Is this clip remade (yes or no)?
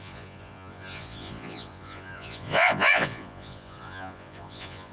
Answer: yes